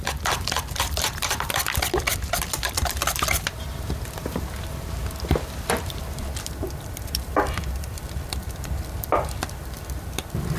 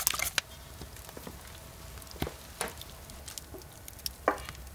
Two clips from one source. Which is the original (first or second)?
second